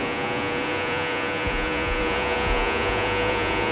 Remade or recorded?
remade